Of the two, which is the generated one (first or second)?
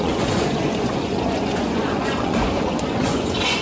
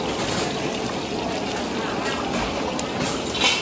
first